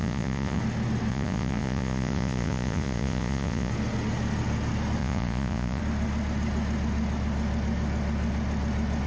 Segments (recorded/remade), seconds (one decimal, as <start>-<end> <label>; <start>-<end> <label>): 0.0-0.6 remade; 0.6-1.1 recorded; 1.1-3.7 remade; 3.7-5.0 recorded; 5.0-5.8 remade; 5.8-9.1 recorded